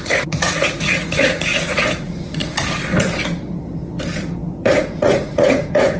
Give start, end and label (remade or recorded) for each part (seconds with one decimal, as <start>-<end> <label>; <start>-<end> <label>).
0.0-2.4 remade; 2.4-4.6 recorded; 4.6-6.0 remade